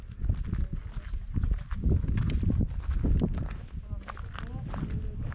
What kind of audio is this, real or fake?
real